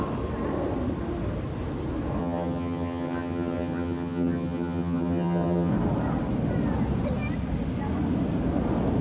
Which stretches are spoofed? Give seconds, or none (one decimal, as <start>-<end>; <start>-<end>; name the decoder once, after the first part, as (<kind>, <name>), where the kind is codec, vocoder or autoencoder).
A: 2.2-5.7 (vocoder, HiFi-GAN)